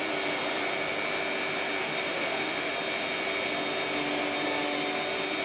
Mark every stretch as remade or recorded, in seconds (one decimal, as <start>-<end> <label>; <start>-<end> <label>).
0.0-1.8 recorded; 1.8-2.7 remade; 2.7-5.4 recorded